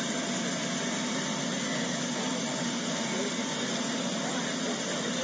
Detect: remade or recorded recorded